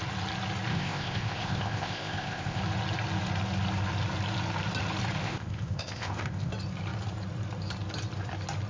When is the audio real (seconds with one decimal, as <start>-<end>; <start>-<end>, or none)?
0.0-0.7; 2.6-5.2; 6.5-8.7